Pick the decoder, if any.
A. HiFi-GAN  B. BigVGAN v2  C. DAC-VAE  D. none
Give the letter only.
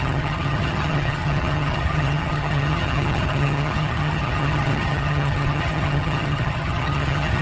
A